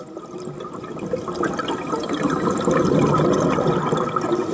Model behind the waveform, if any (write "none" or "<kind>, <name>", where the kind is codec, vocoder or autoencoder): none